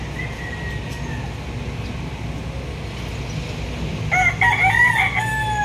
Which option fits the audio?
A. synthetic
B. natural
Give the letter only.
B